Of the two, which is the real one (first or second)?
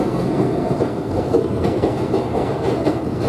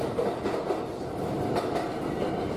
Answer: second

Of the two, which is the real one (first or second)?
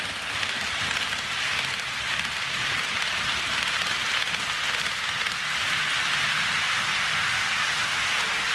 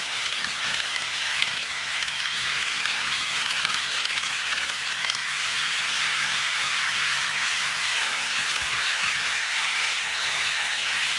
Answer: first